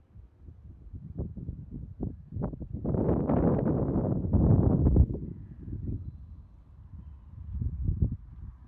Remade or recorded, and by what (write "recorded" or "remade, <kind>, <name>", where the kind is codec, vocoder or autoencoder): recorded